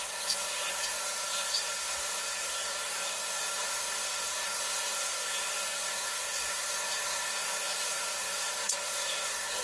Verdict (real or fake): fake